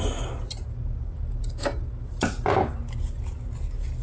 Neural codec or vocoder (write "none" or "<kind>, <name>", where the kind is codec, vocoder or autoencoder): none